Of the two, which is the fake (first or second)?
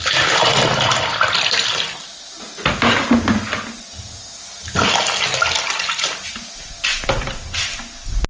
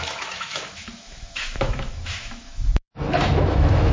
second